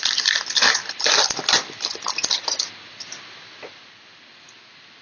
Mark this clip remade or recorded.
recorded